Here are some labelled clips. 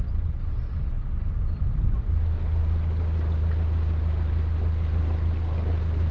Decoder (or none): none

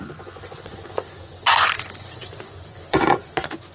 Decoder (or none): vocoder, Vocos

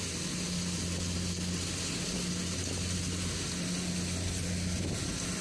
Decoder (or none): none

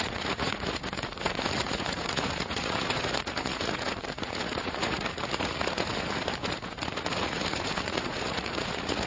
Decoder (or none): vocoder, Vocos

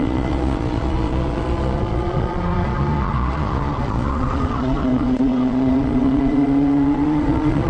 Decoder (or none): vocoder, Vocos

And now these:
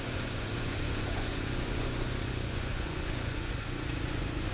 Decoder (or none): vocoder, Vocos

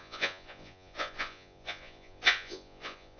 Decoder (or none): vocoder, Vocos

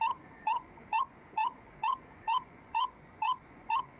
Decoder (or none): vocoder, Vocos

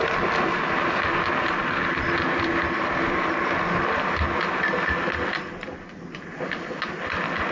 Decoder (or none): none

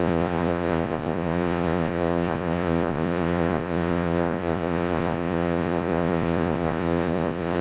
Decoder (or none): vocoder, Vocos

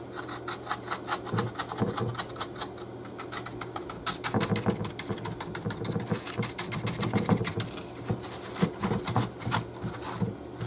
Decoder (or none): none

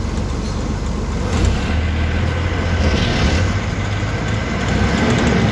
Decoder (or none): none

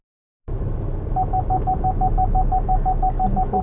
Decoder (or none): none